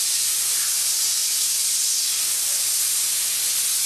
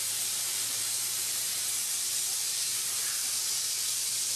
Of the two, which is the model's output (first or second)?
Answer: second